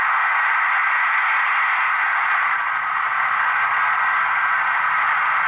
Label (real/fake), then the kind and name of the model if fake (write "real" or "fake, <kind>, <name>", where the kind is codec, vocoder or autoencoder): real